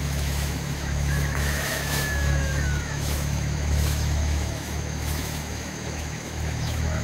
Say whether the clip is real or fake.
fake